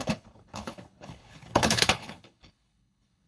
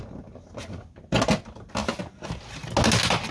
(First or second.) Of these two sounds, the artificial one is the first